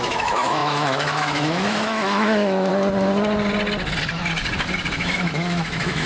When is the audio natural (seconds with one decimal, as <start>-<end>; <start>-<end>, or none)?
2.7-4.9